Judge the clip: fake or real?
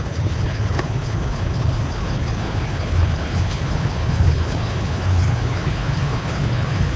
fake